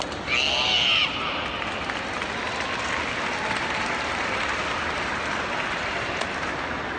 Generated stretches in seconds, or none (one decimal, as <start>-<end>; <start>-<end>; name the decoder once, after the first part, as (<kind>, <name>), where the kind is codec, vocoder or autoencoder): none